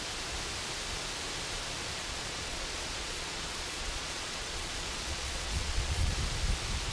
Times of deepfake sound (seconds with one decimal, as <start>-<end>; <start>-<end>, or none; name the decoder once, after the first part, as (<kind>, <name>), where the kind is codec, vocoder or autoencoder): 2.0-6.1 (vocoder, Vocos)